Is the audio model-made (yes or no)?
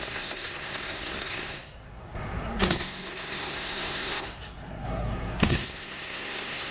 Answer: yes